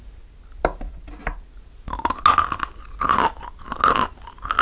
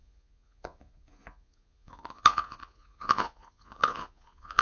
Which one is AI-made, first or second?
second